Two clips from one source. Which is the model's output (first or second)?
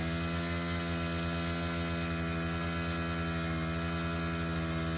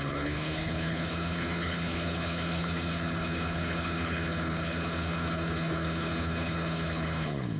second